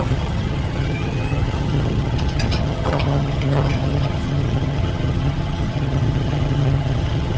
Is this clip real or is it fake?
fake